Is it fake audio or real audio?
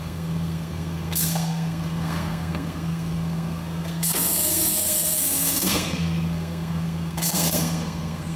fake